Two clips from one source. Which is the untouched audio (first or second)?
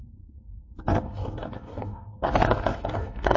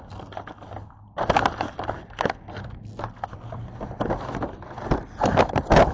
second